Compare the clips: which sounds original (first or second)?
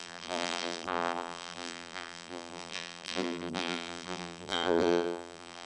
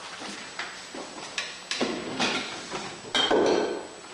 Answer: second